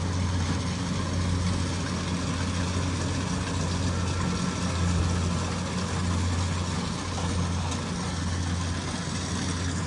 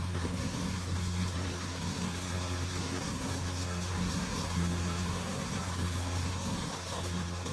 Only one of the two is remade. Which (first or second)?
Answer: second